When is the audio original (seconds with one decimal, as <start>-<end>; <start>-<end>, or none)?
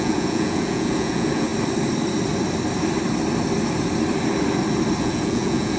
1.5-5.0